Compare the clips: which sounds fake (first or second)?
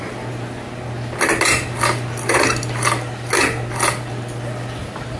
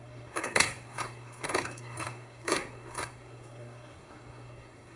second